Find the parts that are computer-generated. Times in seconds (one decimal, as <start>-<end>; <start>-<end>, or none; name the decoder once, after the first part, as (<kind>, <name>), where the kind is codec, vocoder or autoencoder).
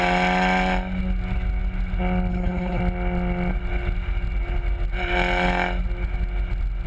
2.3-2.8 (codec, HILCodec)